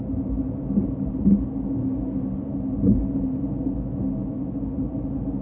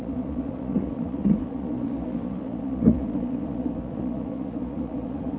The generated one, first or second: second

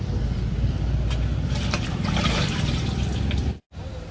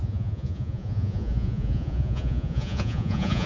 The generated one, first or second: second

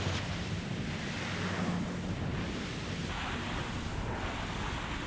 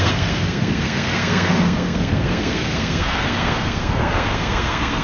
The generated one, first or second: second